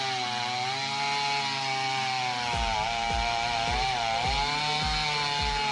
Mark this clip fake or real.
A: real